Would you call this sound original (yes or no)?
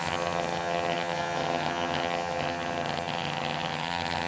no